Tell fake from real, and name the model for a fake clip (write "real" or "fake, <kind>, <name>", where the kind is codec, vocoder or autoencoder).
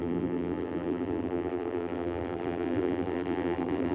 fake, vocoder, BigVGAN v2